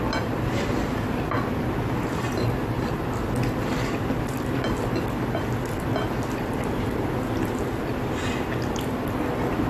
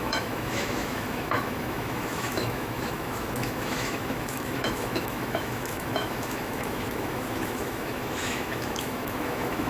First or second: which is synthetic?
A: second